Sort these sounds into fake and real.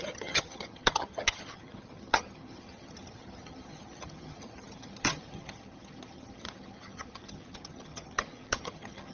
fake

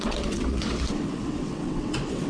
fake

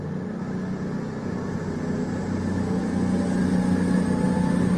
real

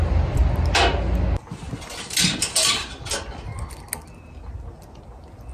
real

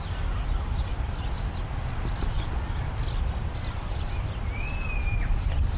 fake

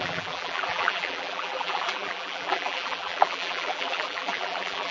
fake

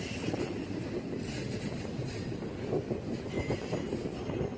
real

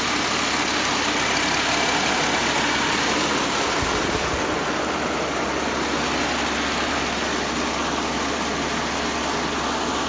real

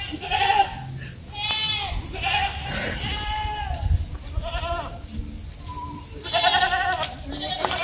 real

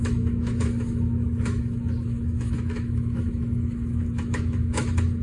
fake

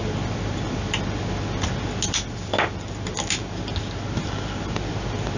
real